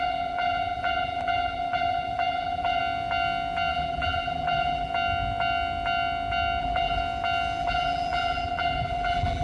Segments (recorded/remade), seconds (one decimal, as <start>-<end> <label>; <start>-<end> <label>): 0.0-2.8 remade; 2.8-3.7 recorded; 3.7-4.9 remade; 4.9-6.6 recorded; 6.6-7.0 remade; 7.0-7.6 recorded; 7.6-9.4 remade